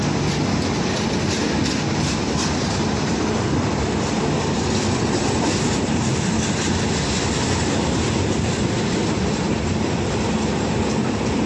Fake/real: real